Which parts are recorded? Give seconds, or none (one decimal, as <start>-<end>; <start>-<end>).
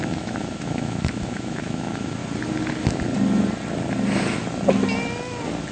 2.2-5.7